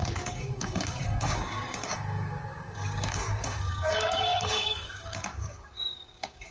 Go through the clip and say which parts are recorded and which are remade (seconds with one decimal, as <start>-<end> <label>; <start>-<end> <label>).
0.0-6.5 remade